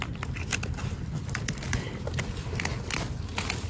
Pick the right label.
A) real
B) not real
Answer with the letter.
A